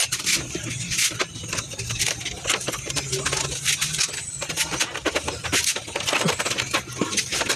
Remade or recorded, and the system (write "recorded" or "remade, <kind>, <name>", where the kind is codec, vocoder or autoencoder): recorded